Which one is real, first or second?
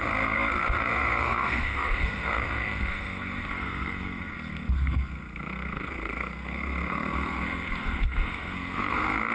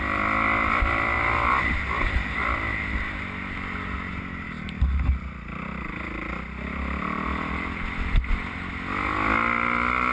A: second